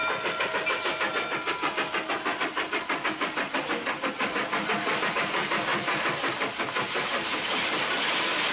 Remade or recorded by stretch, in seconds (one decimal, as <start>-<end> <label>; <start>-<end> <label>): 0.0-8.5 recorded